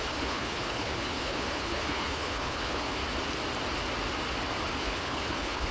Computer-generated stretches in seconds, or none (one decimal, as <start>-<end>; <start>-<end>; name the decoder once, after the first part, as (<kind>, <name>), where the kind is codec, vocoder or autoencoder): 0.0-3.0 (codec, HILCodec); 4.8-5.7